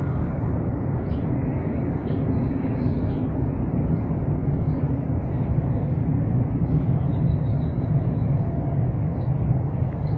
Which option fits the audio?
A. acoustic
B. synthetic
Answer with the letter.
B